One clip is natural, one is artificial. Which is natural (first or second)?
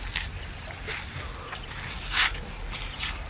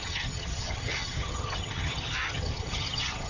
first